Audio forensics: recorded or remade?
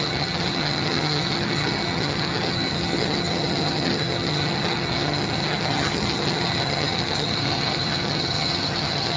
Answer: remade